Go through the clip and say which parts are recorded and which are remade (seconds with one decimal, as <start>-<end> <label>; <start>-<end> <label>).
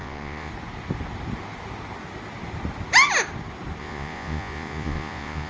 0.0-0.5 remade; 0.5-3.8 recorded; 3.8-5.5 remade